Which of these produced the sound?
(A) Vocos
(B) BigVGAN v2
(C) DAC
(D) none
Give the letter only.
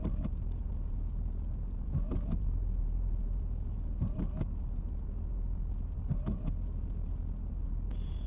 D